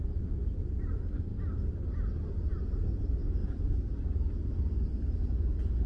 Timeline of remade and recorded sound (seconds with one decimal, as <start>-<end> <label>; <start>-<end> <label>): 0.0-5.9 recorded